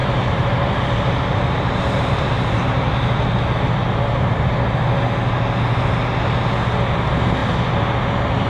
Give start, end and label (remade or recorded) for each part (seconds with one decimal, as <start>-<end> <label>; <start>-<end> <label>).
0.0-2.9 remade; 2.9-3.8 recorded; 3.8-4.5 remade; 4.5-8.5 recorded